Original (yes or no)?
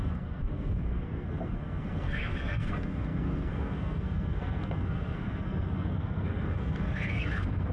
no